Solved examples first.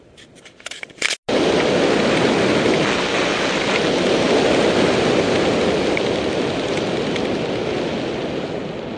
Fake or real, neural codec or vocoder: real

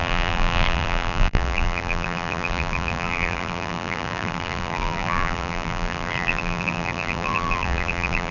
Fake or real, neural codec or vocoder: fake, vocoder, BigVGAN v2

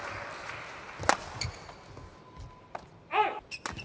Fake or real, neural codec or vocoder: real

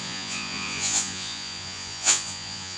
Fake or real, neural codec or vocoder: fake, vocoder, Vocos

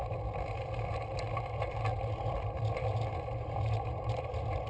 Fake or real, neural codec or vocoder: fake, vocoder, BigVGAN v2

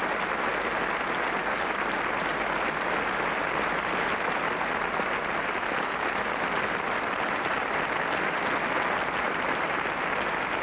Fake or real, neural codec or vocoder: real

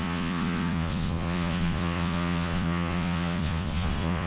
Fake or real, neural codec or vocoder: fake, vocoder, Vocos